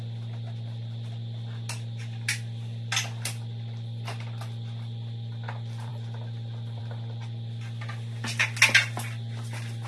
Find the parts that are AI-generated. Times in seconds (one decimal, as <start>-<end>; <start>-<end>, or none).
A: none